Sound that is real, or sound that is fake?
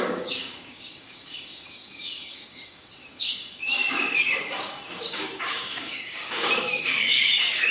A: fake